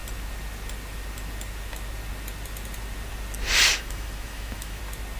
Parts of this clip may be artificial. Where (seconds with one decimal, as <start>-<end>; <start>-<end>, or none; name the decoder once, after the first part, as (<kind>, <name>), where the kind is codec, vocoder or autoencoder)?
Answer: 3.7-4.8 (autoencoder, DAC-VAE)